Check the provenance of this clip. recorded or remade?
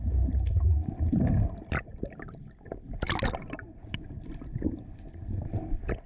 recorded